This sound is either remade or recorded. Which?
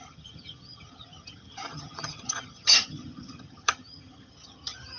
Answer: remade